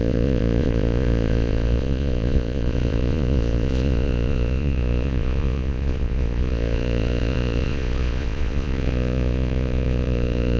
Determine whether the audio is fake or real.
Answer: fake